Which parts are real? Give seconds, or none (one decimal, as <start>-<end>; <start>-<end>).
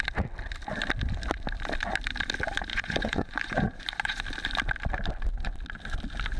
0.0-2.7; 4.2-6.4